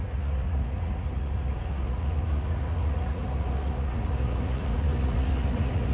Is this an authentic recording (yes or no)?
no